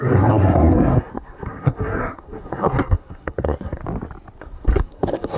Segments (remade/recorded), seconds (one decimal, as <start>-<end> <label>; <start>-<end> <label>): 0.0-3.8 remade; 3.8-4.4 recorded; 4.4-5.4 remade